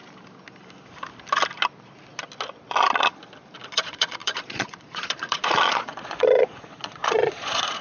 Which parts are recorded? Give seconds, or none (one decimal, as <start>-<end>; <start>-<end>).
0.0-3.6